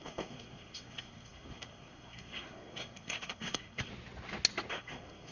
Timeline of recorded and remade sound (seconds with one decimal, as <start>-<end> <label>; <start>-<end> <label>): 0.0-3.9 remade; 3.9-4.7 recorded; 4.7-5.3 remade